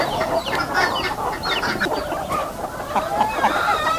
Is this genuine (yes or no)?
yes